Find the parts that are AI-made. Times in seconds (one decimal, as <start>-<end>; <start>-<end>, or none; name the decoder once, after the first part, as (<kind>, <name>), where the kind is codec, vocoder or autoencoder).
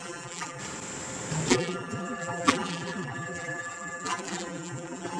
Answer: 0.0-0.6 (vocoder, BigVGAN v2); 1.5-5.2